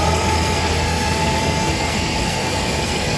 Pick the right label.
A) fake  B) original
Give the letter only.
A